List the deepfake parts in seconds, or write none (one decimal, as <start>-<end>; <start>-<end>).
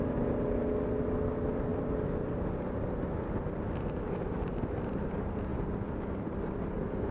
none